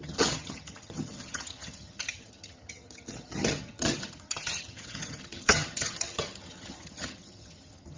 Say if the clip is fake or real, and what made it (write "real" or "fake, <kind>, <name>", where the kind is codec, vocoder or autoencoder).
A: fake, vocoder, HiFi-GAN